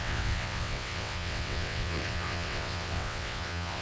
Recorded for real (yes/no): no